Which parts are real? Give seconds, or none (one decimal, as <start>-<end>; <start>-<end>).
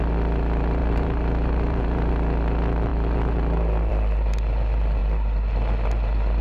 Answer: 0.0-0.8; 2.1-6.4